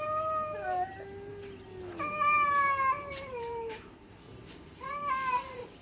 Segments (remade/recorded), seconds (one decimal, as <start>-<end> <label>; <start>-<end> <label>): 0.0-1.3 remade; 1.3-3.1 recorded; 3.1-5.8 remade